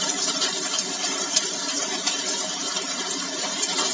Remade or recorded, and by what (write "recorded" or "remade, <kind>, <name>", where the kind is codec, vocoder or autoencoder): remade, vocoder, BigVGAN v2